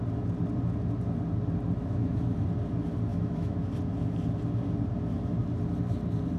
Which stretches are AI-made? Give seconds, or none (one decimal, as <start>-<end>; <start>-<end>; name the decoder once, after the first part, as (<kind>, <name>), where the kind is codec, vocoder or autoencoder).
1.8-2.3 (autoencoder, DAC-VAE); 3.1-3.6